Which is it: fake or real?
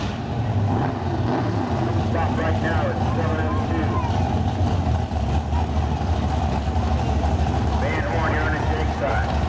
real